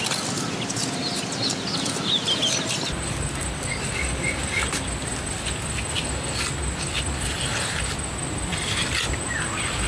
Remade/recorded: recorded